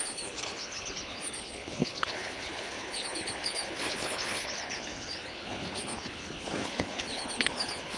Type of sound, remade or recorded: remade